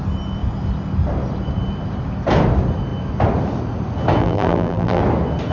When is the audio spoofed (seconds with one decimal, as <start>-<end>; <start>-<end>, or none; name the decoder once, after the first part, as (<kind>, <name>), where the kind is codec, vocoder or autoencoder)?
4.2-5.0 (vocoder, BigVGAN v2)